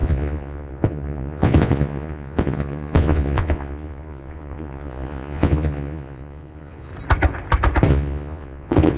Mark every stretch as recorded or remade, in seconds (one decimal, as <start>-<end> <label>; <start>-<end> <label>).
0.0-6.9 remade; 6.9-7.9 recorded; 7.9-9.0 remade